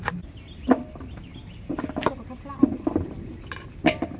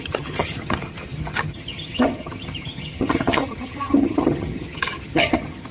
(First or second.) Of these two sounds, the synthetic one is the second